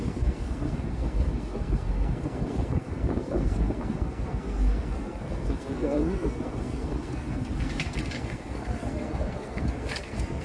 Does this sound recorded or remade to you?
remade